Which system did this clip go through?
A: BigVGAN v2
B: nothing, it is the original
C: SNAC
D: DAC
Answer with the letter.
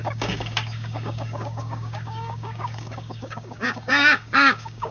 D